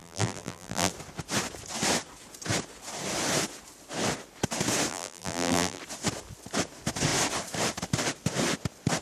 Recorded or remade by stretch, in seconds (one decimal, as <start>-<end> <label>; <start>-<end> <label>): 0.0-0.9 remade; 0.9-4.9 recorded; 4.9-5.8 remade; 5.8-9.0 recorded